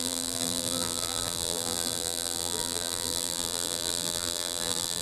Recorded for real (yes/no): no